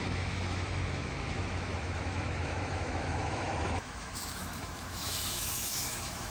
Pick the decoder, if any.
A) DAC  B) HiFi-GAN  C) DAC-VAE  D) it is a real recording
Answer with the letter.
C